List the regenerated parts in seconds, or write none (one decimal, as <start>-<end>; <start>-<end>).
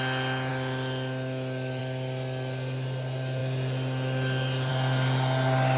none